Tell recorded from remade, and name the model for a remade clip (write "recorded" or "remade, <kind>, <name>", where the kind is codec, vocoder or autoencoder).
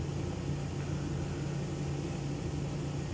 remade, vocoder, BigVGAN v2